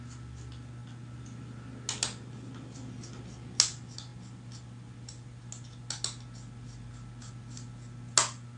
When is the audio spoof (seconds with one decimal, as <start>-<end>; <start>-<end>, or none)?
none